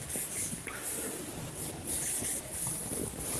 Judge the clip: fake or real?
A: real